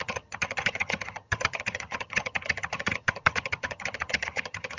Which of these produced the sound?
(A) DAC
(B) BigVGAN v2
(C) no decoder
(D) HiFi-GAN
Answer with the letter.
D